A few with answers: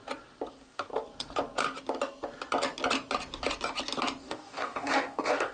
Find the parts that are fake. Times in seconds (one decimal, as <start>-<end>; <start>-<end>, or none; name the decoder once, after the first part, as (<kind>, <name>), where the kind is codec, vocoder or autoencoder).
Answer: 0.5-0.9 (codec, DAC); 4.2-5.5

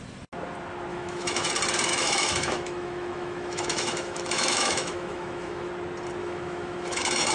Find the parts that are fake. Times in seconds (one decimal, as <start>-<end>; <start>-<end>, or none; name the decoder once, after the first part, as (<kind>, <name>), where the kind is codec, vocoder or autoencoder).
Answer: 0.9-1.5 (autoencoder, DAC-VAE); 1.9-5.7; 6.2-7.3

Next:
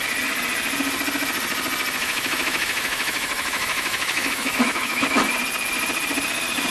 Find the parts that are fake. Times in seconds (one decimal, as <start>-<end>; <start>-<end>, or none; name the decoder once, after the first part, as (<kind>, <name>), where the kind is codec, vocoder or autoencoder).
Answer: 2.0-5.2 (autoencoder, DAC-VAE)

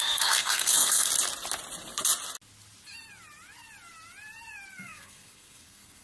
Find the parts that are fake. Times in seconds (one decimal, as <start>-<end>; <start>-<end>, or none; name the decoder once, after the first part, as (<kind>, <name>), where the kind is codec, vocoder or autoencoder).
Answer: 0.0-1.1 (codec, SNAC); 4.7-6.0

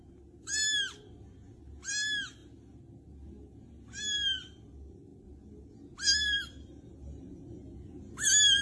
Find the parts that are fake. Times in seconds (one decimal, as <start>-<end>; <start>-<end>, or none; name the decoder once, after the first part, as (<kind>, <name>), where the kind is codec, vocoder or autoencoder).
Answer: none

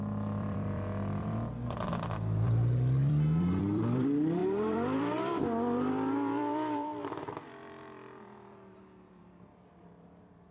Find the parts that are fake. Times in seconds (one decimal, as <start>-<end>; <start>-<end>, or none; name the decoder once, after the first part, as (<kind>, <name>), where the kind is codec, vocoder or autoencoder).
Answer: 0.0-10.5 (vocoder, BigVGAN v2)

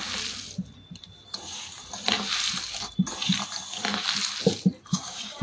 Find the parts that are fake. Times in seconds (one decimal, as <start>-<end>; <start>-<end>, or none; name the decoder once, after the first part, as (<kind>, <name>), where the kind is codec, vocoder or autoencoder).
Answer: 4.9-5.4 (codec, DAC)